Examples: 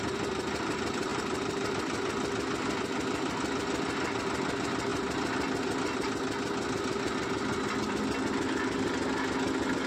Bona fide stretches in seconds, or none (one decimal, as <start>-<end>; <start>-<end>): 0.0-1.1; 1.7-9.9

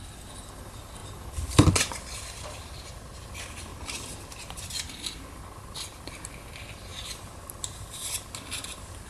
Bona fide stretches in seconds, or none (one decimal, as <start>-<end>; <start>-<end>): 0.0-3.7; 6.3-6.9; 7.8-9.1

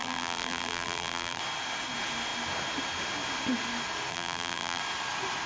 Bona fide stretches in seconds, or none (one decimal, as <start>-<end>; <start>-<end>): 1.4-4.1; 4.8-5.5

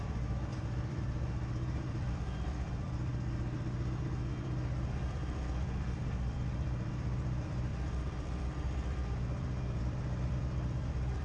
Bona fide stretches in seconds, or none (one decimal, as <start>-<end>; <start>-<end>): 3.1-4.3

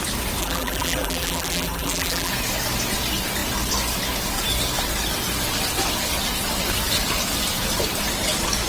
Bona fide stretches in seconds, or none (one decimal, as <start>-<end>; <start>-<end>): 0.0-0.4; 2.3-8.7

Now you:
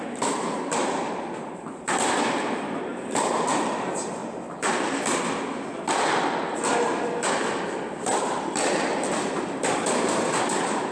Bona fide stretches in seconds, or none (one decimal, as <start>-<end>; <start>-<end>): 4.2-6.2